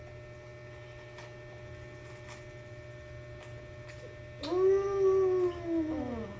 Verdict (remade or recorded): recorded